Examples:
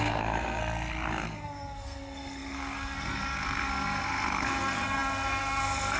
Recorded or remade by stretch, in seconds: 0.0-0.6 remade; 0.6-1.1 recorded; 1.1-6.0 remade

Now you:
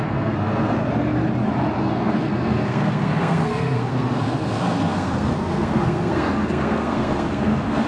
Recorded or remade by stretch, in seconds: 0.0-0.8 remade; 0.8-1.8 recorded; 1.8-7.9 remade

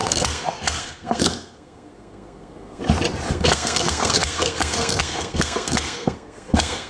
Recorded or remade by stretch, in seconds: 0.0-2.8 remade; 2.8-3.3 recorded; 3.3-6.9 remade

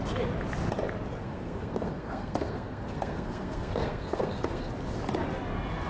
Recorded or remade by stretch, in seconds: 0.0-1.2 recorded; 1.2-4.7 remade; 4.7-5.9 recorded

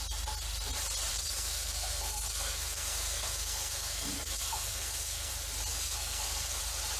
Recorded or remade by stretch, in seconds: 0.0-1.1 recorded; 1.1-5.3 remade; 5.3-5.7 recorded; 5.7-6.6 remade; 6.6-7.0 recorded